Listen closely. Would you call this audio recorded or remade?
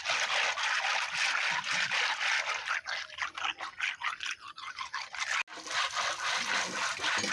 recorded